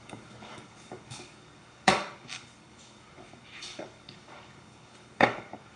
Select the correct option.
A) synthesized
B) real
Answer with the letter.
A